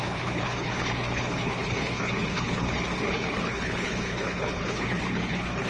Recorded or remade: remade